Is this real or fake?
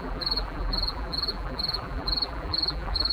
fake